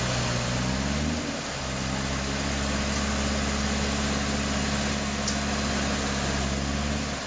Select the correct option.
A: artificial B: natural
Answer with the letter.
B